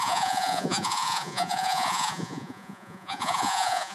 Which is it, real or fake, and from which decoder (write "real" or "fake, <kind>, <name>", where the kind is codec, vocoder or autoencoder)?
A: fake, vocoder, Vocos